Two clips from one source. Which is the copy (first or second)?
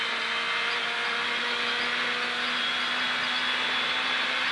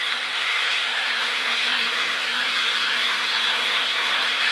second